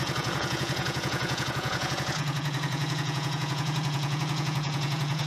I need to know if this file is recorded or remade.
remade